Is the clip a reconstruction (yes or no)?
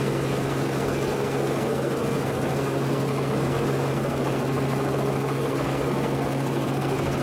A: yes